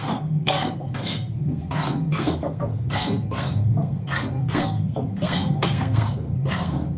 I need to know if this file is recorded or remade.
remade